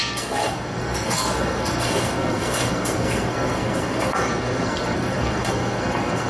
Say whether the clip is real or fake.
fake